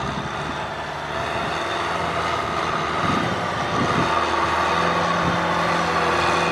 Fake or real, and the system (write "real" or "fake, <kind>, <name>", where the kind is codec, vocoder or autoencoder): real